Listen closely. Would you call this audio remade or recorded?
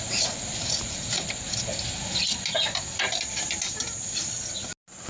recorded